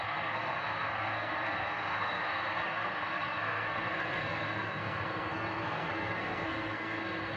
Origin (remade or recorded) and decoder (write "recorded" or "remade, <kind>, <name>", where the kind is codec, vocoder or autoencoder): remade, codec, SNAC